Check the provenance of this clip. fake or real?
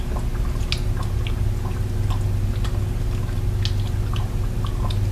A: real